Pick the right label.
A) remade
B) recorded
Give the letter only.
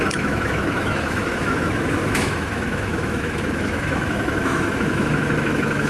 A